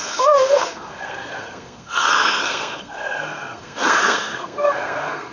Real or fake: fake